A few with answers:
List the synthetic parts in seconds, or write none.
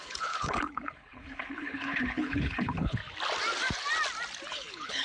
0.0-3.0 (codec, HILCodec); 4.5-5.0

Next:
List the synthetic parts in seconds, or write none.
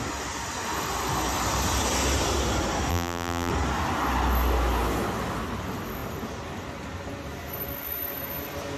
2.9-3.5 (vocoder, BigVGAN v2)